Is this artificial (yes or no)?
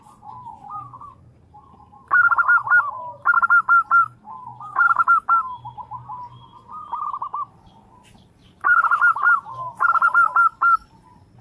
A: no